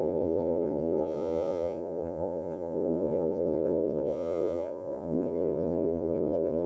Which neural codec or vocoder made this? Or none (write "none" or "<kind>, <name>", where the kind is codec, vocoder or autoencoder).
vocoder, Vocos